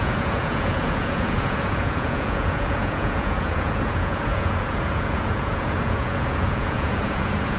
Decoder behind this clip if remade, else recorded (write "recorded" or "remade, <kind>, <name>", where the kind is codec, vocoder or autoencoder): remade, vocoder, Vocos